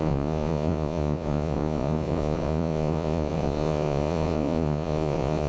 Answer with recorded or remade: remade